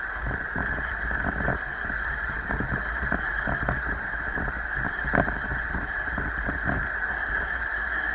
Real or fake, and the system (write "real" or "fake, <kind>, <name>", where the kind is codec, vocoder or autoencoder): real